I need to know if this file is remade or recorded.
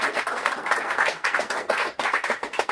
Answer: remade